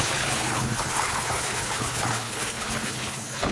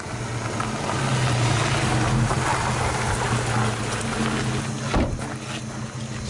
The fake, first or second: first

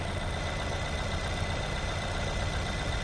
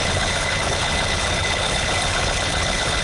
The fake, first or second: second